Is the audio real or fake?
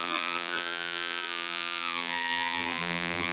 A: fake